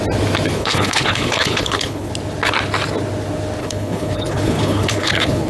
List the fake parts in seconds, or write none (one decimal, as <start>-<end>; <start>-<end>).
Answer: 0.5-2.1; 3.6-5.5